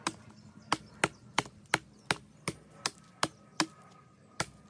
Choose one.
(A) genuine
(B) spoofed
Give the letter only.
A